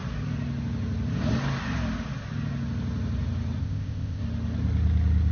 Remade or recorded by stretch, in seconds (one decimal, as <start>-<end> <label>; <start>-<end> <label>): 0.0-3.6 recorded; 3.6-4.2 remade; 4.2-5.3 recorded